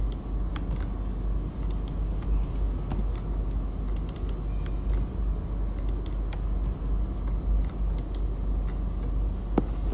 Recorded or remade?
recorded